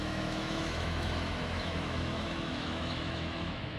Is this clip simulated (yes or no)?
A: yes